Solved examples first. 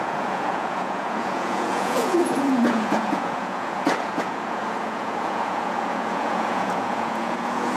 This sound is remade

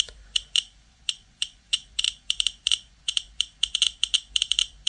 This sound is remade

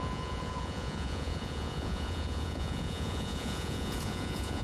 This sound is remade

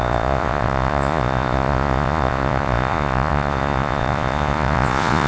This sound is remade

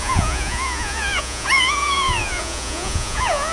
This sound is remade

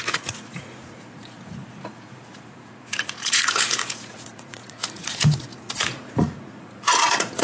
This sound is remade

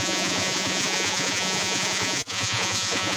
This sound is remade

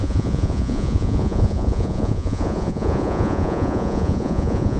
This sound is remade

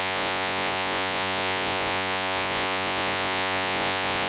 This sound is remade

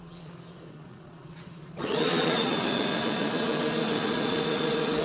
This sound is remade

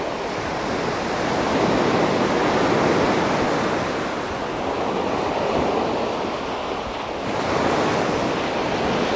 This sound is recorded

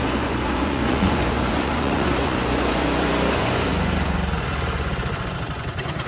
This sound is remade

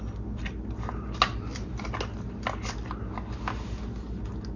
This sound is recorded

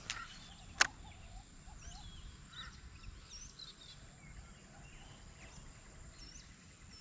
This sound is recorded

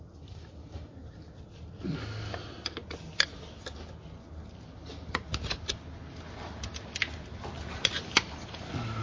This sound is recorded